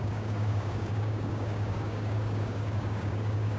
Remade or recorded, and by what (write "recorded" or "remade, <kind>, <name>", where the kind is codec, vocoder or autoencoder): remade, codec, DAC